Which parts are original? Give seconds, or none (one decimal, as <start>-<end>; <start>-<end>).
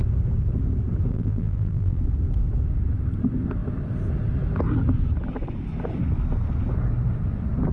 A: 0.0-1.1; 2.0-7.7